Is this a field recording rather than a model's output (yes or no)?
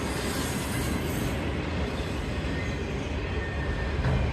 yes